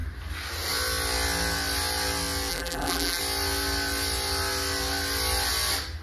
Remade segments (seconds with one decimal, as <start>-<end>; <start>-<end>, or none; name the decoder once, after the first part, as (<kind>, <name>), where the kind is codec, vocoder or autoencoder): 2.5-3.2 (vocoder, BigVGAN v2)